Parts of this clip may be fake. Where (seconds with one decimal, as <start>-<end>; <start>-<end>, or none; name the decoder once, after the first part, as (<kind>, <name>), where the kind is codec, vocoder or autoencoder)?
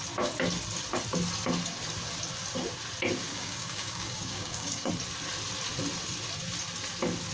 3.3-4.9 (codec, DAC)